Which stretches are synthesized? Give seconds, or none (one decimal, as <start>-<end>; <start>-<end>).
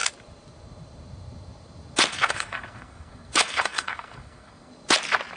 2.1-4.7